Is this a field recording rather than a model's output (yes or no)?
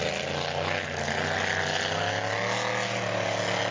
yes